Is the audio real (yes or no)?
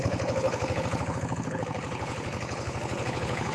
no